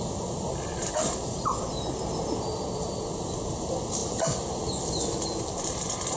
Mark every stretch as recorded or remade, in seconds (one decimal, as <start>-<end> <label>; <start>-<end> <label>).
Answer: 0.0-6.2 recorded

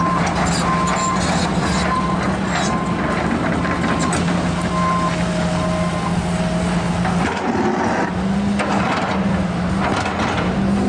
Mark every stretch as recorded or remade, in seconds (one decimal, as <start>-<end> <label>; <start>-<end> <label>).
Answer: 0.0-10.9 recorded

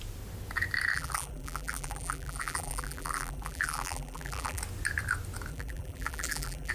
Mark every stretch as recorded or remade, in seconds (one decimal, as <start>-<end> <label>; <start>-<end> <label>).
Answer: 0.0-0.9 recorded; 0.9-4.6 remade; 4.6-5.5 recorded; 5.5-6.7 remade

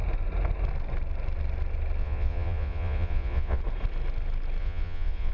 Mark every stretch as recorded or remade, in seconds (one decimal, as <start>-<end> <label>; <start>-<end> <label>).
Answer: 0.0-2.0 recorded; 2.0-3.6 remade; 3.6-4.6 recorded; 4.6-5.3 remade